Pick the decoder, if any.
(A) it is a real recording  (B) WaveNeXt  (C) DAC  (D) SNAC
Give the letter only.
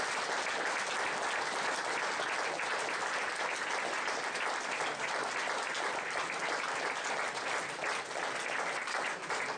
A